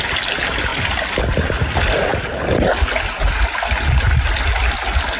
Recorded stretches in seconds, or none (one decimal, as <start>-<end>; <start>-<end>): 0.0-0.7; 1.7-5.2